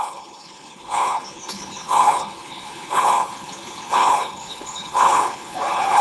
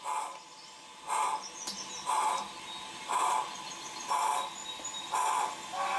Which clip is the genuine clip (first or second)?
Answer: second